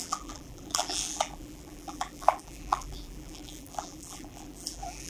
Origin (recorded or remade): remade